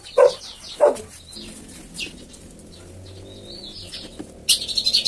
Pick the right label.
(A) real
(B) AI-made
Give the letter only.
A